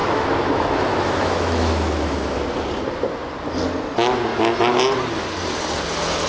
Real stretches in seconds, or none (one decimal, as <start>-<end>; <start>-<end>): 2.4-6.3